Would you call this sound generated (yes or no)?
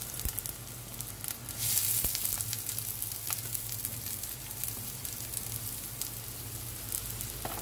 no